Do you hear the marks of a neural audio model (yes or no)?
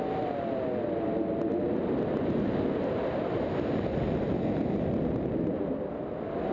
no